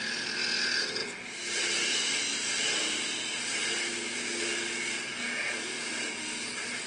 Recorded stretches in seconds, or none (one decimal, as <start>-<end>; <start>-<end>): 0.0-6.9

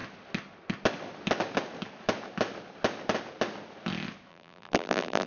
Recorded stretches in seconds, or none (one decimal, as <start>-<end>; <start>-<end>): 0.0-4.3